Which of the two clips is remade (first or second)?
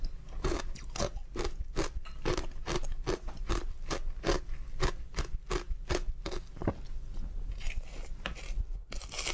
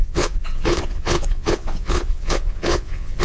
second